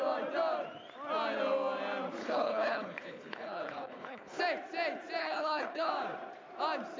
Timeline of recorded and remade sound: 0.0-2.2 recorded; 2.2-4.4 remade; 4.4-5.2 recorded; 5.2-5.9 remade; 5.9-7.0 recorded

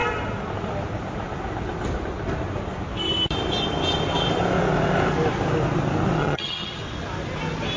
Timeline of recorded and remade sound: 0.0-6.2 recorded; 6.2-6.8 remade; 6.8-7.8 recorded

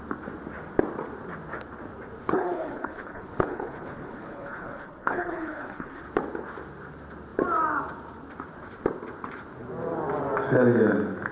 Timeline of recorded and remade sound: 0.0-2.2 recorded; 2.2-6.0 remade; 6.0-11.3 recorded

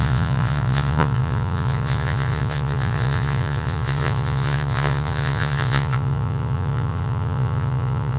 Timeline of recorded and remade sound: 0.0-8.2 remade

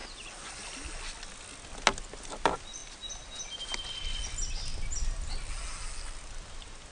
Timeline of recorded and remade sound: 0.0-6.9 recorded

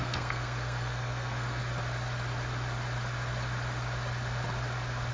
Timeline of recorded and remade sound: 0.0-1.6 remade; 1.6-5.1 recorded